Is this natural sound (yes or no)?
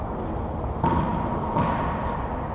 yes